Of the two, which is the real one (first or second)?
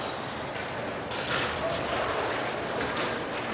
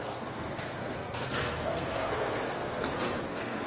first